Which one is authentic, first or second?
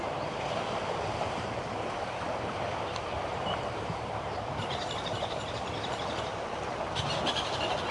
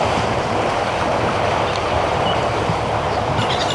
second